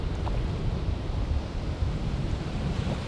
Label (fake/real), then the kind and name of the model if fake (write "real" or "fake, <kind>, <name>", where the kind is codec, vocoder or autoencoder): real